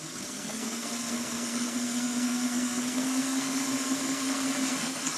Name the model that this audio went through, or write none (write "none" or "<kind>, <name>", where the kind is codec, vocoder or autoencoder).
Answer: codec, SNAC